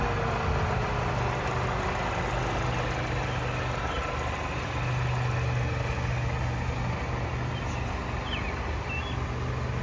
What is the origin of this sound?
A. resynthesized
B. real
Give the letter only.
B